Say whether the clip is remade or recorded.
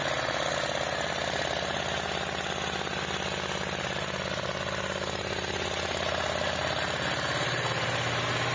recorded